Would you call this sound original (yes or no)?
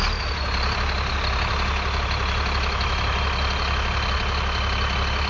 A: yes